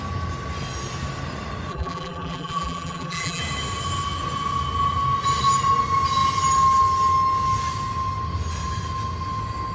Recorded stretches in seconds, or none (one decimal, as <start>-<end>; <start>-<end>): 0.0-1.7; 3.4-9.7